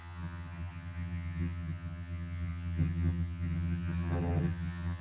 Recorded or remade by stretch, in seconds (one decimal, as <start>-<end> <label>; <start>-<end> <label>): 0.0-5.0 remade